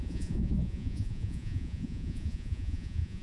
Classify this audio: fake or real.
fake